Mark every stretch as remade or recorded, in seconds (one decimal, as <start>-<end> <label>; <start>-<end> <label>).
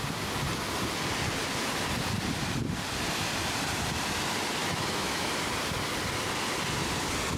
0.0-4.6 recorded; 4.6-5.3 remade; 5.3-7.4 recorded